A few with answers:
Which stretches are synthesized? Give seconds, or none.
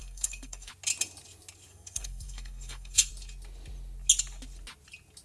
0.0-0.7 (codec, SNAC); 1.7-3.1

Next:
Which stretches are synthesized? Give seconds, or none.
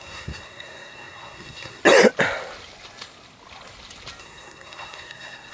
0.0-1.8 (codec, SNAC); 4.2-5.5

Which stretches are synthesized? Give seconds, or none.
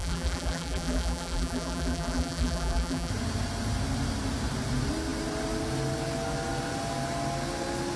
0.0-3.1 (vocoder, BigVGAN v2)